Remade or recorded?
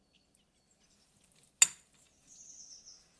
recorded